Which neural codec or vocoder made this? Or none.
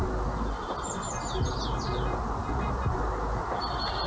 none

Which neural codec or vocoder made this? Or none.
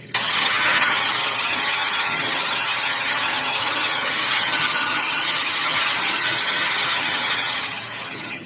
vocoder, HiFi-GAN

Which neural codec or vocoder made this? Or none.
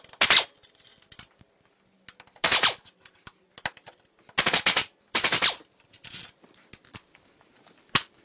none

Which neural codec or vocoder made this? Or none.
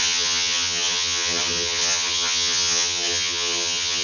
vocoder, HiFi-GAN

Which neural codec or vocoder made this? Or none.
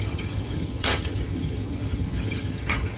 vocoder, HiFi-GAN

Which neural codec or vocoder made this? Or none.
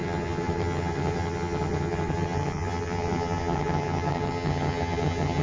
vocoder, HiFi-GAN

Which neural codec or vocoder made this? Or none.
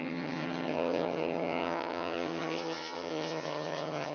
vocoder, HiFi-GAN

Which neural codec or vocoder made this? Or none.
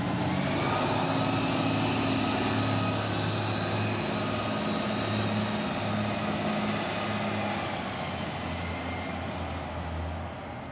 none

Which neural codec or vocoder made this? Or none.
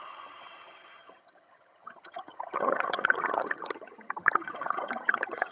vocoder, HiFi-GAN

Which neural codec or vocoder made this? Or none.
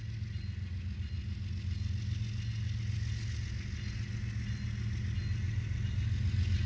none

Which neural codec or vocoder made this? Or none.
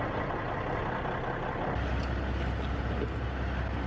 none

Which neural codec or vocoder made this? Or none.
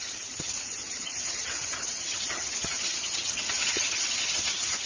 vocoder, HiFi-GAN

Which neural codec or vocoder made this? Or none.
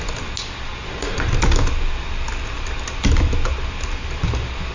none